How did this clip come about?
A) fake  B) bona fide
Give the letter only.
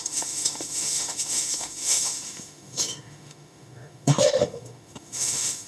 A